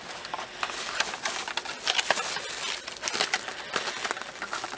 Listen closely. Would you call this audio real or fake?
real